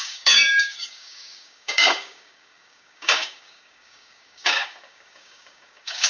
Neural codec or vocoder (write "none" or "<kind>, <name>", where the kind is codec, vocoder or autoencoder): codec, DAC